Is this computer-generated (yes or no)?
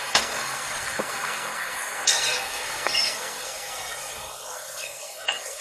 yes